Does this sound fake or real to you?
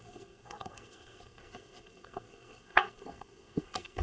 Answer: fake